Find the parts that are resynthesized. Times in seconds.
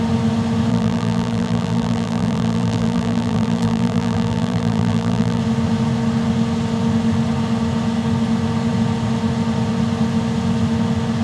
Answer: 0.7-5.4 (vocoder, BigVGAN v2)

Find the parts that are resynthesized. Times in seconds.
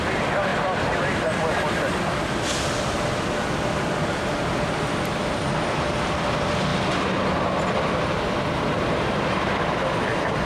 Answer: none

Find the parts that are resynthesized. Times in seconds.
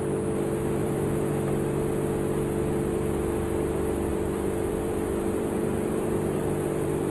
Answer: 0.8-1.3 (vocoder, BigVGAN v2); 4.1-7.1